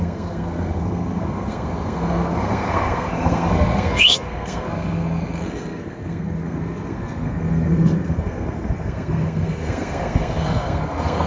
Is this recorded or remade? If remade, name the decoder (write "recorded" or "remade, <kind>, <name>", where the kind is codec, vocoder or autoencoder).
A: remade, codec, SNAC